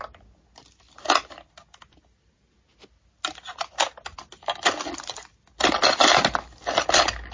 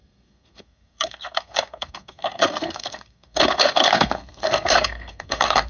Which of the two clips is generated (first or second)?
second